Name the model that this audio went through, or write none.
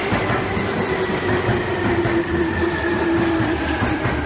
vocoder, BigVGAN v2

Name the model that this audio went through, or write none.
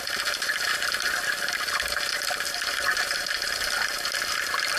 none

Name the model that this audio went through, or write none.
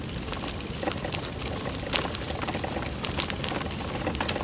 vocoder, BigVGAN v2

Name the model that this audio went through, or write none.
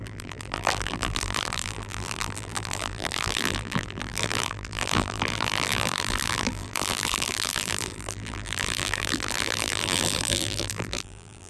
vocoder, BigVGAN v2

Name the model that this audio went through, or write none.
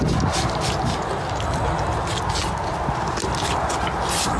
none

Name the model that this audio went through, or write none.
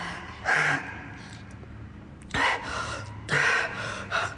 vocoder, BigVGAN v2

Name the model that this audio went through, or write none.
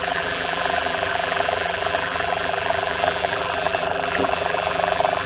vocoder, BigVGAN v2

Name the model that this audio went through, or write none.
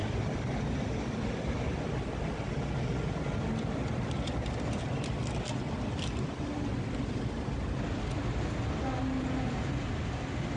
none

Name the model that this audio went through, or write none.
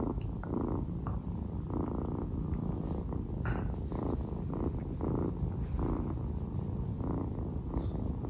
none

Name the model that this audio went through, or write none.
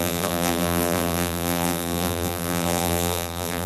vocoder, BigVGAN v2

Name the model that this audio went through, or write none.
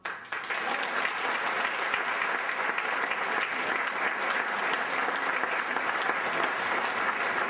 none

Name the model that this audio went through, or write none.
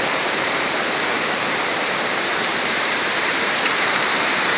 vocoder, BigVGAN v2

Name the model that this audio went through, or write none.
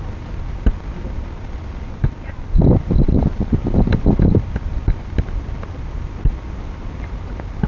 vocoder, BigVGAN v2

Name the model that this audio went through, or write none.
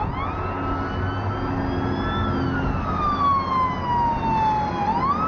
none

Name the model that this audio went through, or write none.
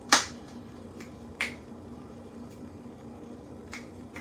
vocoder, BigVGAN v2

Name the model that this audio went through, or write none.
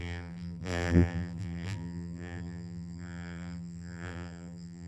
vocoder, BigVGAN v2